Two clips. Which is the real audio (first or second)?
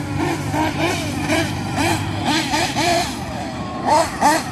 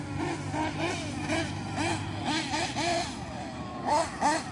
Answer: second